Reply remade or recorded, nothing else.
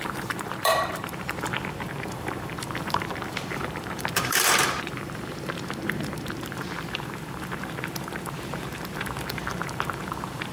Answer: remade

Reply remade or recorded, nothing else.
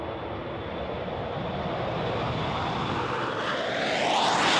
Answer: recorded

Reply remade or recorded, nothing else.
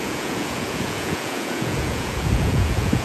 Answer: remade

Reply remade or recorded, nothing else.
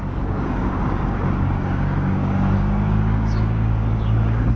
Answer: remade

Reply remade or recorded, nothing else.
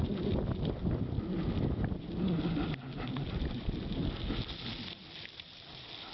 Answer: recorded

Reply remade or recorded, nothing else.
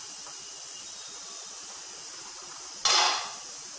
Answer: recorded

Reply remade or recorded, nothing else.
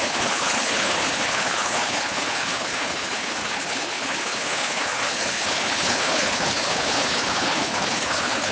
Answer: remade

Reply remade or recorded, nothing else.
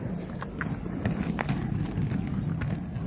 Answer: recorded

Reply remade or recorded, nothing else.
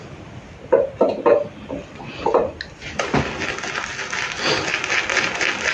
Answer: recorded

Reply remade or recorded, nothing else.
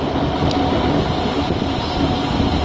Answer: recorded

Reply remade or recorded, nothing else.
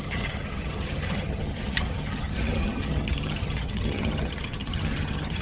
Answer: remade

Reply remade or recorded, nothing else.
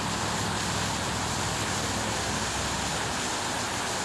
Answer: recorded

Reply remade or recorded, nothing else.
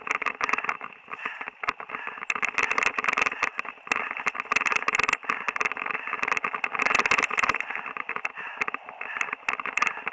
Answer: recorded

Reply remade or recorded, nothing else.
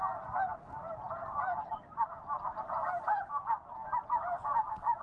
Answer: recorded